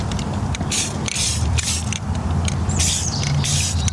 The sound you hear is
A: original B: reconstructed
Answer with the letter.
B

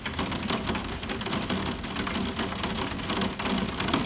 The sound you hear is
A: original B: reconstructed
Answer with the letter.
A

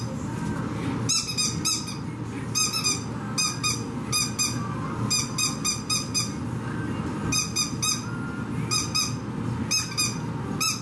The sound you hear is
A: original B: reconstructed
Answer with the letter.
A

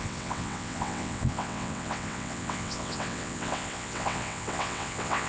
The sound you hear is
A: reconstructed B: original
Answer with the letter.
A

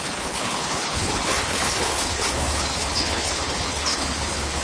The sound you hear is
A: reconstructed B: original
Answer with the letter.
A